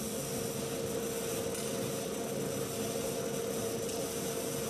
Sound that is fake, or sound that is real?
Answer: real